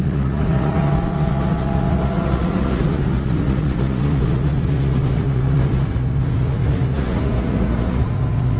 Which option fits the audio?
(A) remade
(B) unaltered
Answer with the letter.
A